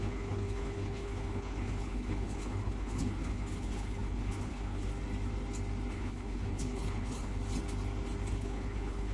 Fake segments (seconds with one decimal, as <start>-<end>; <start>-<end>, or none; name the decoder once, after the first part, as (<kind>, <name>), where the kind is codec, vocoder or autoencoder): 0.0-4.9 (codec, HILCodec); 5.9-7.4; 8.3-9.1